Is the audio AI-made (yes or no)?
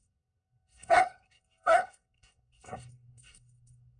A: yes